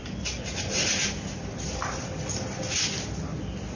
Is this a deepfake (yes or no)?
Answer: no